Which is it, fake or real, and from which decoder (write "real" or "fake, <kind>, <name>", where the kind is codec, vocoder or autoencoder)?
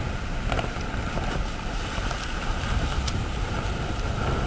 fake, vocoder, BigVGAN v2